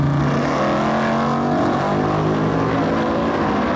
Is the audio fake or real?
real